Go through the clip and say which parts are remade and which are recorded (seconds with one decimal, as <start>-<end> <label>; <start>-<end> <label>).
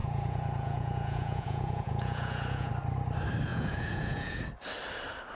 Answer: 0.0-2.7 remade; 2.7-3.5 recorded; 3.5-4.4 remade; 4.4-5.3 recorded